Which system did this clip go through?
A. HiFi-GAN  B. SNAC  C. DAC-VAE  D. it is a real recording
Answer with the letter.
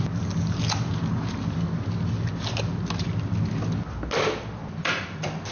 D